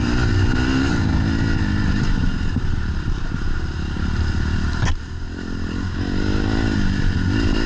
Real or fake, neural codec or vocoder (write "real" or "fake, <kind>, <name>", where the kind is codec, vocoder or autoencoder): real